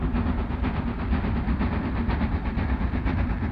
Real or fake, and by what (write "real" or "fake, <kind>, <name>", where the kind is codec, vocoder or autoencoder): fake, vocoder, BigVGAN v2